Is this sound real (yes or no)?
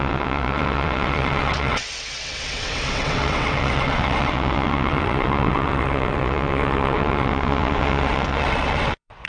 no